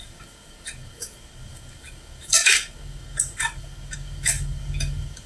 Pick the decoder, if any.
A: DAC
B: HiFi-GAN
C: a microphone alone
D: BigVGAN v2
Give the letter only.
A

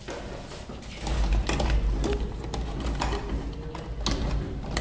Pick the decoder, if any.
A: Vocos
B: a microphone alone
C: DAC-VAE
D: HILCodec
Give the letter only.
B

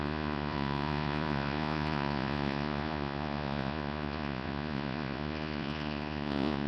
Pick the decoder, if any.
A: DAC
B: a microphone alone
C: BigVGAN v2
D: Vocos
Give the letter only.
D